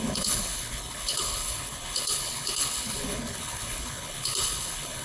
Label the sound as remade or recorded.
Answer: remade